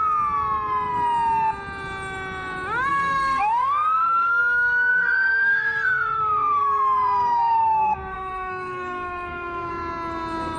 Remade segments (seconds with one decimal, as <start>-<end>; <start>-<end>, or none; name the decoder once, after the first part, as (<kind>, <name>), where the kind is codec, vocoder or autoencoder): 2.9-4.4 (codec, SNAC); 4.9-9.7